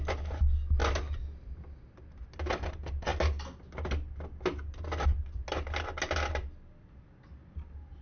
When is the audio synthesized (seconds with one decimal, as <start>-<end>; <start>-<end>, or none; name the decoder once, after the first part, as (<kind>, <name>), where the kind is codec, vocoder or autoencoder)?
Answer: none